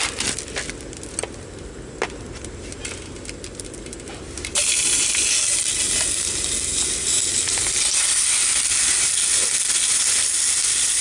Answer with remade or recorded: recorded